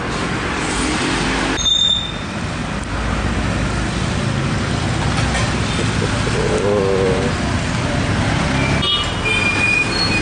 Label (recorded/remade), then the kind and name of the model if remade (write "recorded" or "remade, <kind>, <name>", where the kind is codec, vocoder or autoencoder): recorded